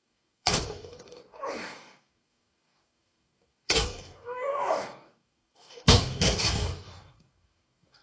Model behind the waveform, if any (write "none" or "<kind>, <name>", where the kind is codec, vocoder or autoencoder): codec, DAC